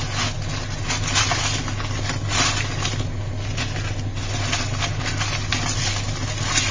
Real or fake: real